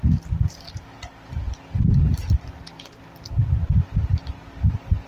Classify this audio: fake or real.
real